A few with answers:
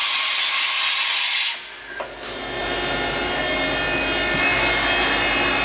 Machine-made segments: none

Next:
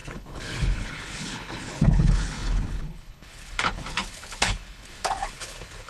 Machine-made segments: 0.0-5.9 (codec, HILCodec)

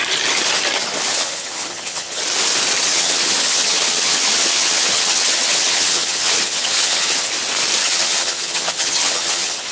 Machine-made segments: 1.1-2.2 (vocoder, HiFi-GAN); 2.9-7.3; 7.8-9.7

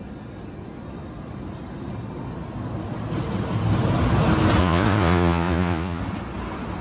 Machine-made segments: 4.6-6.0 (vocoder, Vocos)